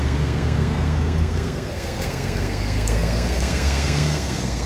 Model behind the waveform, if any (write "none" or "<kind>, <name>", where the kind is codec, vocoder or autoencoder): codec, SNAC